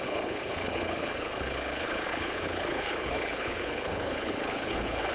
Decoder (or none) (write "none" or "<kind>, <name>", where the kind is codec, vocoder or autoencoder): codec, HILCodec